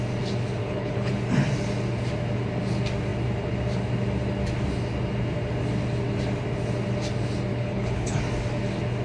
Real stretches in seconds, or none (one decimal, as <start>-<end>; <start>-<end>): 0.0-0.6; 1.1-7.5; 8.2-9.0